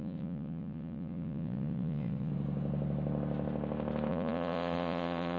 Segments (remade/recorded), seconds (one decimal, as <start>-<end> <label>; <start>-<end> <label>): 0.0-2.3 remade; 2.3-4.1 recorded; 4.1-5.4 remade